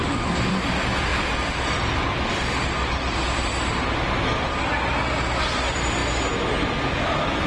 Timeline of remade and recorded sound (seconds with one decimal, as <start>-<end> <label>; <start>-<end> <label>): 0.0-3.5 remade; 3.5-5.4 recorded; 5.4-6.0 remade; 6.0-6.9 recorded; 6.9-7.5 remade